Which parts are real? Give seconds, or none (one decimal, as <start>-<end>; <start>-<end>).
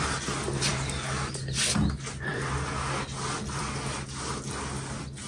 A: 0.0-5.3